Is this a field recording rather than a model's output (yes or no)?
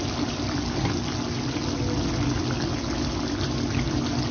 yes